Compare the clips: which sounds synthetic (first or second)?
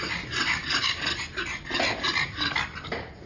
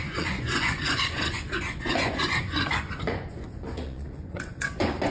second